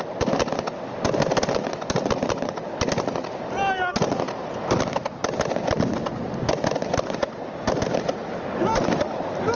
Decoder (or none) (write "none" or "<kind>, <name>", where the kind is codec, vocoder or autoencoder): none